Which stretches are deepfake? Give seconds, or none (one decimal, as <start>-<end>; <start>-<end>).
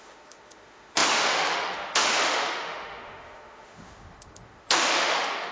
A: 0.0-5.5